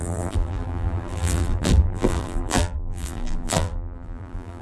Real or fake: fake